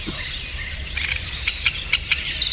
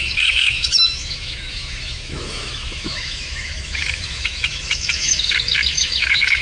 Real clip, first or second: first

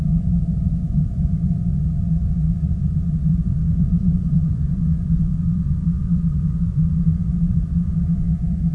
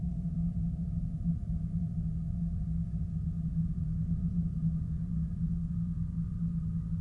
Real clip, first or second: second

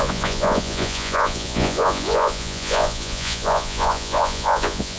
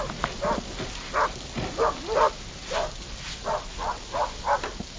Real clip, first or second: second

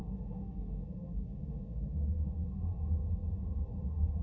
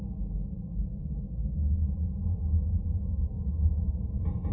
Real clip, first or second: second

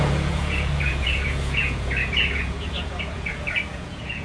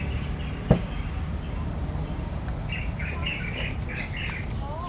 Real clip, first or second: second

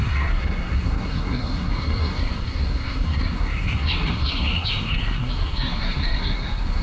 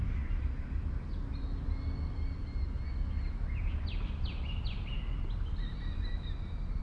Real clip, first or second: second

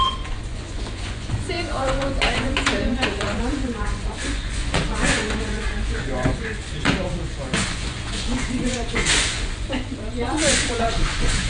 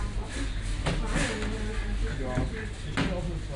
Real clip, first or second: second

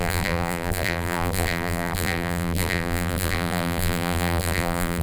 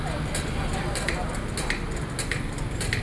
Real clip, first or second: second